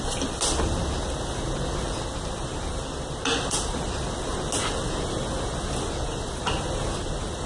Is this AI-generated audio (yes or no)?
no